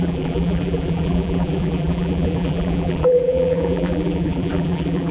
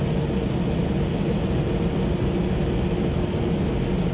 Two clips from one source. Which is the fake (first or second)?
first